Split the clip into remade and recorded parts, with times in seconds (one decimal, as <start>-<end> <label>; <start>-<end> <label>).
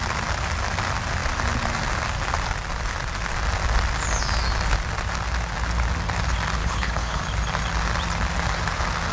0.0-6.6 recorded; 6.6-7.2 remade; 7.2-9.1 recorded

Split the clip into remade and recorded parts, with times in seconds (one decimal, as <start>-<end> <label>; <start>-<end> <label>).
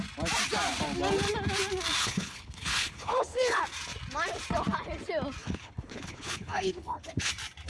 0.0-2.0 recorded; 2.0-3.6 remade; 3.6-5.4 recorded; 5.4-7.3 remade; 7.3-7.7 recorded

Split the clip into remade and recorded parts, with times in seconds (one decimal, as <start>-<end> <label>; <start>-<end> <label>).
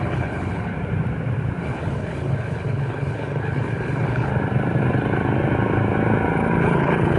0.0-0.7 remade; 0.7-1.6 recorded; 1.6-4.3 remade; 4.3-6.6 recorded; 6.6-7.2 remade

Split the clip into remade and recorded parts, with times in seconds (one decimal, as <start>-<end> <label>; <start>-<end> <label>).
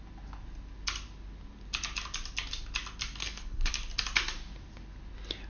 0.0-3.2 recorded; 3.2-3.7 remade; 3.7-5.5 recorded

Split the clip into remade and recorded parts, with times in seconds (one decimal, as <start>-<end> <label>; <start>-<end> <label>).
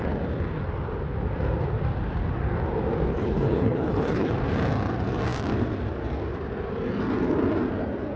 0.0-3.1 recorded; 3.1-4.3 remade; 4.3-8.2 recorded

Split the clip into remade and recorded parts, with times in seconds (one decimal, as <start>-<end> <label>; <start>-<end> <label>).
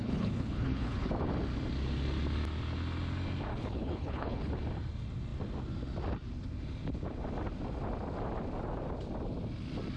0.0-1.1 remade; 1.1-3.5 recorded; 3.5-4.5 remade; 4.5-10.0 recorded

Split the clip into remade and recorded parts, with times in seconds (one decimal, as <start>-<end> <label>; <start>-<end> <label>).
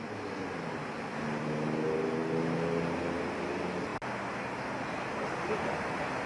0.0-6.3 recorded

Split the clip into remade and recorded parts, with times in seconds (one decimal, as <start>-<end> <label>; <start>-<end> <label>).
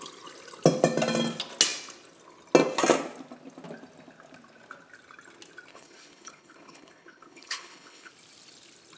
0.0-5.7 recorded; 5.7-8.1 remade; 8.1-9.0 recorded